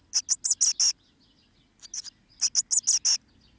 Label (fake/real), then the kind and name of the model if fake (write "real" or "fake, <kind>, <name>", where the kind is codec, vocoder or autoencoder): real